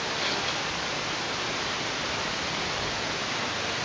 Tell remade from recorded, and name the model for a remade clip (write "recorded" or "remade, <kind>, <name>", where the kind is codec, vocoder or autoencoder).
recorded